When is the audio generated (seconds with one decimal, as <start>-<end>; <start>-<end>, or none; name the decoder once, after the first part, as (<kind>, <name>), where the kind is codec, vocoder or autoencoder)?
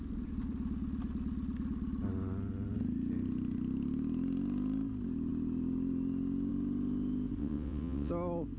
7.4-8.1 (vocoder, WaveNeXt)